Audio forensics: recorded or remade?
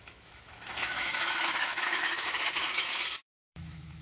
remade